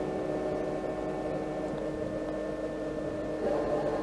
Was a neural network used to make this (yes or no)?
no